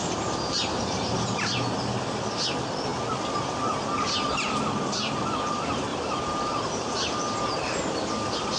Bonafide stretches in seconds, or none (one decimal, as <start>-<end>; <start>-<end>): 1.5-5.9; 7.4-8.6